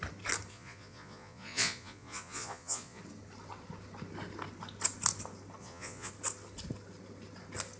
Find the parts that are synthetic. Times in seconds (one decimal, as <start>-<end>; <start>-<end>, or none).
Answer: 0.5-3.0; 5.6-6.1